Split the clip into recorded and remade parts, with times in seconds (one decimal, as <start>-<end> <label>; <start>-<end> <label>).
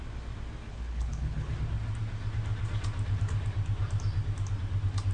0.0-0.7 recorded; 0.7-1.5 remade; 1.5-5.1 recorded